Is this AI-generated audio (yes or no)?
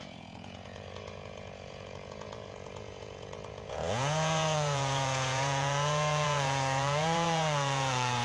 yes